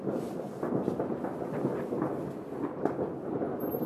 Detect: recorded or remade recorded